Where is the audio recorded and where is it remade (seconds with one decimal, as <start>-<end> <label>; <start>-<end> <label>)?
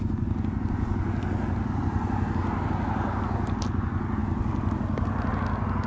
0.0-5.9 recorded